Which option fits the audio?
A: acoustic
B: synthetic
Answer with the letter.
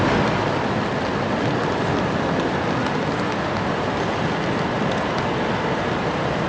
A